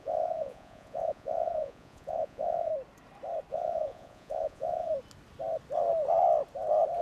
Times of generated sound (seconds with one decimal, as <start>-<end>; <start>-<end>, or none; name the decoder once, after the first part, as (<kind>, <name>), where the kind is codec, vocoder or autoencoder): 0.0-2.7 (vocoder, Vocos); 3.5-4.9

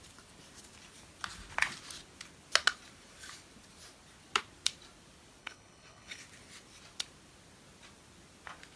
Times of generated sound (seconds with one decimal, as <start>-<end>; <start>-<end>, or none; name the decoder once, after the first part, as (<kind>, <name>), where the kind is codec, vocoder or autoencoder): 5.4-6.2 (codec, HILCodec)

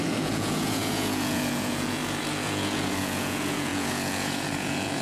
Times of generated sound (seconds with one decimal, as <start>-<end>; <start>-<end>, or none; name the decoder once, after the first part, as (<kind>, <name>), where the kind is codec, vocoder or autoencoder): 0.0-5.0 (vocoder, Vocos)